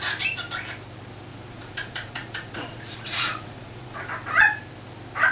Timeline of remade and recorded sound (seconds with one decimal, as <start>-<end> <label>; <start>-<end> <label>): 0.0-1.3 recorded; 1.3-4.0 remade; 4.0-5.3 recorded